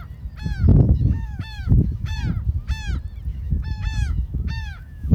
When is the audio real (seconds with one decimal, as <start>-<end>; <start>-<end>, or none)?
0.0-0.7; 2.2-3.3